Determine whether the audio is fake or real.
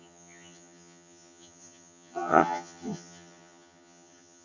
fake